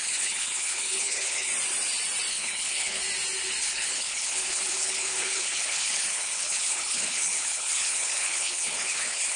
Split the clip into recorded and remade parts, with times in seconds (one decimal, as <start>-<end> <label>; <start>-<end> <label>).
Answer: 0.0-1.5 remade; 1.5-2.3 recorded; 2.3-3.0 remade; 3.0-3.6 recorded; 3.6-9.4 remade